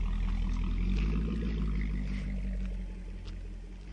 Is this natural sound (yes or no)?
yes